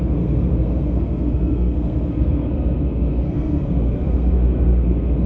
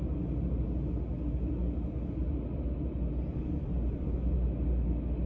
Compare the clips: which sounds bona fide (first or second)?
second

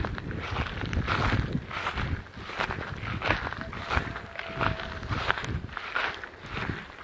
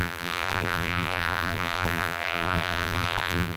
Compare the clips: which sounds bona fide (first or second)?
first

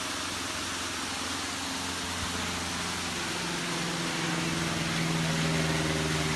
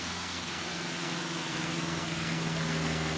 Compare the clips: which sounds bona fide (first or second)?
first